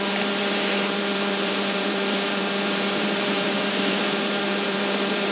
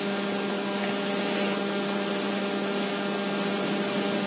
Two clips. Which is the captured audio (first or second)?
second